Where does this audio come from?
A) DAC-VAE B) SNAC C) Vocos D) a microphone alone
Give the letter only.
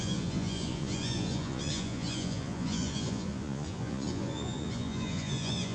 C